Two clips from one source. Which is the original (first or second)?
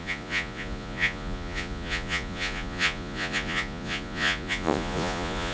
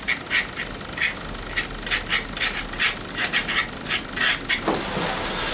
second